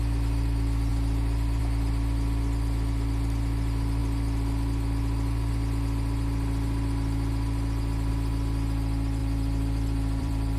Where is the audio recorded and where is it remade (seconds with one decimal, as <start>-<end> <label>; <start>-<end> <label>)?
0.0-0.9 recorded; 0.9-1.6 remade; 1.6-9.2 recorded; 9.2-10.6 remade